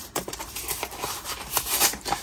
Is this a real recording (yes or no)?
no